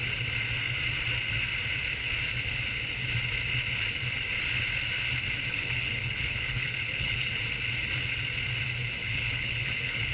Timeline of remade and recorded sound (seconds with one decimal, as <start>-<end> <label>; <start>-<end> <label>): 0.0-5.5 recorded; 5.5-7.3 remade; 7.3-9.0 recorded; 9.0-10.1 remade